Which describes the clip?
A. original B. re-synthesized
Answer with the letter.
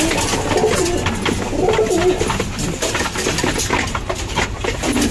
A